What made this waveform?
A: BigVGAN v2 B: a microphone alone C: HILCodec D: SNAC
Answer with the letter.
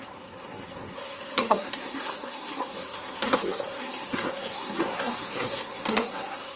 D